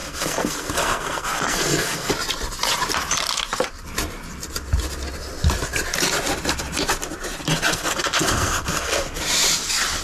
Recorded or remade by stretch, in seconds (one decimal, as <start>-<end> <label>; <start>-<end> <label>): 0.0-2.1 remade; 2.1-7.7 recorded; 7.7-9.2 remade; 9.2-10.0 recorded